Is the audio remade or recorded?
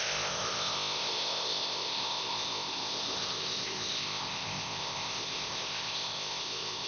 remade